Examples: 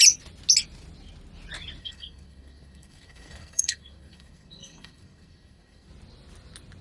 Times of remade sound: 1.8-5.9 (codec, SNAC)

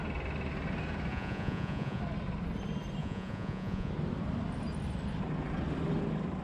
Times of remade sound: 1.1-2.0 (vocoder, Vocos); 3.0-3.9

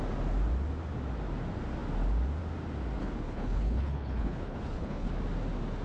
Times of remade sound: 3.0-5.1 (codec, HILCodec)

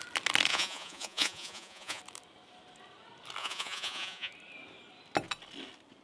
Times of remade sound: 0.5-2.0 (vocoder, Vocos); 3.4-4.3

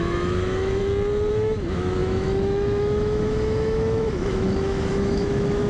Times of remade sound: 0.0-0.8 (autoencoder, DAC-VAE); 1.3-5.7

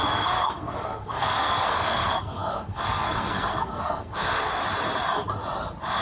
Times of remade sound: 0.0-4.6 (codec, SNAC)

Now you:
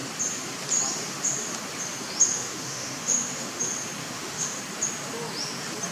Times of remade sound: 2.3-3.6 (autoencoder, DAC-VAE); 4.0-4.6